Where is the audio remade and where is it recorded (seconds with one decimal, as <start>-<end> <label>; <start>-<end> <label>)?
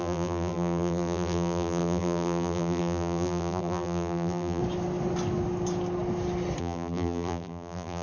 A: 0.0-4.6 remade; 4.6-6.6 recorded; 6.6-8.0 remade